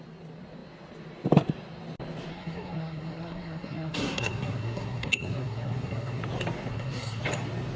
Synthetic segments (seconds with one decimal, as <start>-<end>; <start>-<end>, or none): 2.3-6.2; 6.7-7.2